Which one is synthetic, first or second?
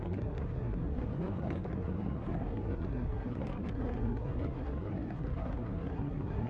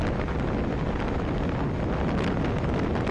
first